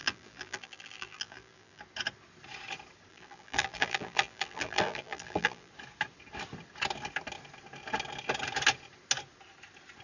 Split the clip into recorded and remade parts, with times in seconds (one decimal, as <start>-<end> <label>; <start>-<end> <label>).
0.0-1.8 remade; 1.8-3.1 recorded; 3.1-5.7 remade; 5.7-10.0 recorded